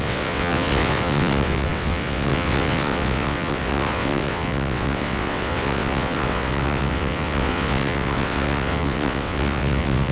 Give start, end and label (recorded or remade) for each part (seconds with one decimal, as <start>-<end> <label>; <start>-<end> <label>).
0.0-10.1 remade